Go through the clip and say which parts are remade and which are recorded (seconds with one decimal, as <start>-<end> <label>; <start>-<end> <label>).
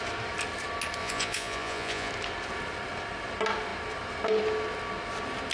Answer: 0.0-1.0 recorded; 1.0-2.1 remade; 2.1-5.5 recorded